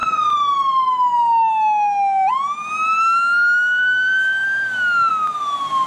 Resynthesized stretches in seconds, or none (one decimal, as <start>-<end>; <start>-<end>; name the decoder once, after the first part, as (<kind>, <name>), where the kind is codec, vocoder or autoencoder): none